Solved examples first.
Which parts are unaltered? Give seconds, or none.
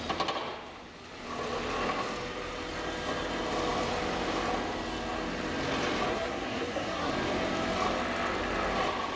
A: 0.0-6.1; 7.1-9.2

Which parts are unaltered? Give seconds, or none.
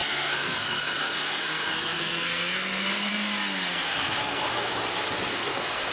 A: 3.1-3.7; 4.8-5.3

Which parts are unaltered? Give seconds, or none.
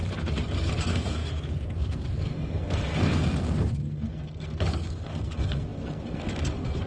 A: 0.0-0.7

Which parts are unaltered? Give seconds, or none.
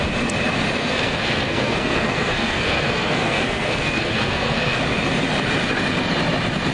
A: 0.0-0.8; 4.8-6.7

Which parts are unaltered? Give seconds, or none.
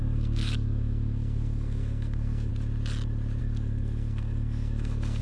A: 2.5-3.4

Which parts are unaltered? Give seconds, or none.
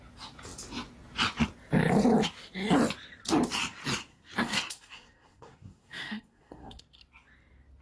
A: 0.0-4.1; 6.8-7.8